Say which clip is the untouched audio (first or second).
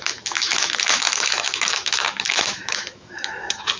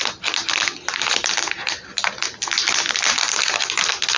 second